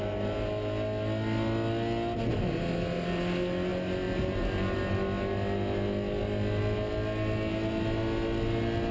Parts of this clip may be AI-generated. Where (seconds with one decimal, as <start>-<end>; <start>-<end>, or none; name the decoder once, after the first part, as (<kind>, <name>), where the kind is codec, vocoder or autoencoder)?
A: none